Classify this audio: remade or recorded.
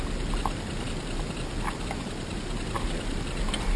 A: recorded